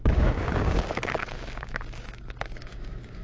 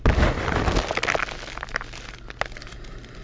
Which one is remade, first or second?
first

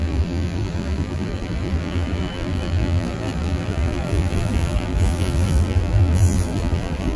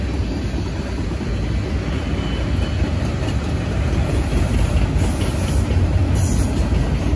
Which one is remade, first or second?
first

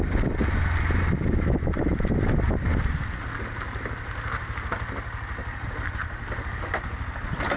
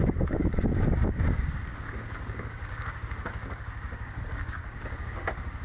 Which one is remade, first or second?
second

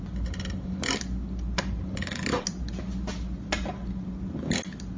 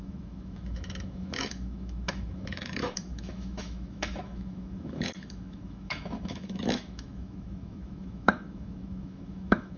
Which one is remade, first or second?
second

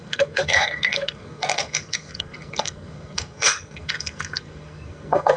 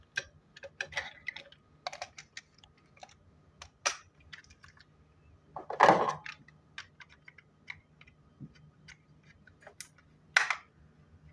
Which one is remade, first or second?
first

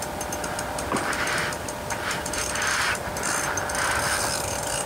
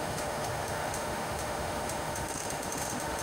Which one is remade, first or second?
second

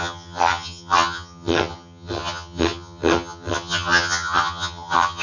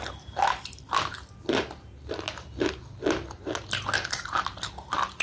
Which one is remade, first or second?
first